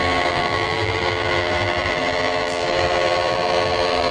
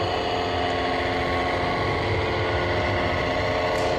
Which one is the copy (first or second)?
first